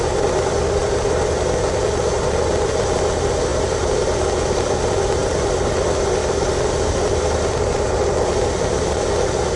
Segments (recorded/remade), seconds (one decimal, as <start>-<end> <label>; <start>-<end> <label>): 0.0-9.6 recorded